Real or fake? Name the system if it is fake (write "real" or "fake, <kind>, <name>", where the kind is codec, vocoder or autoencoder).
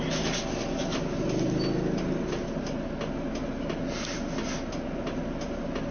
real